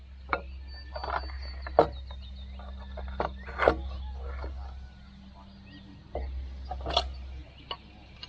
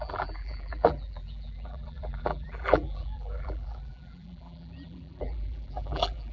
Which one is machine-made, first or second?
second